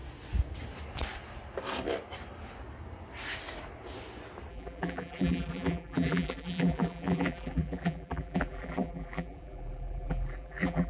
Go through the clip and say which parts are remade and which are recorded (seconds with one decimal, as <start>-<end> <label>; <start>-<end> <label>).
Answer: 0.0-4.5 recorded; 4.5-10.9 remade